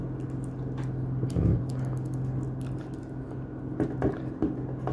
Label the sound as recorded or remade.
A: recorded